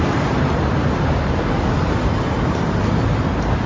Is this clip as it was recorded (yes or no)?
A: yes